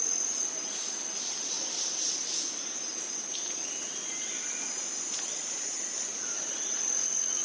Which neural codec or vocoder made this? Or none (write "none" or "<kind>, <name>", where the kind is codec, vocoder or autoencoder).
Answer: none